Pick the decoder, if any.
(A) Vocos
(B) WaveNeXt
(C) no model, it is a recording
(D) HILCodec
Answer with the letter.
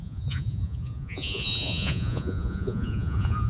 A